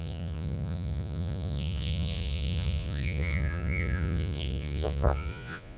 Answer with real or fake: fake